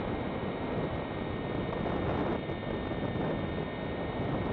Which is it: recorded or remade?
recorded